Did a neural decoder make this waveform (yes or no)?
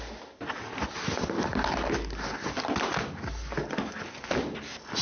no